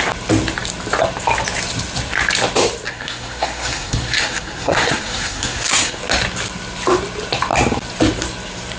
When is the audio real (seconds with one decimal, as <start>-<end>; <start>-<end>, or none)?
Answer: 0.0-2.9; 6.0-8.8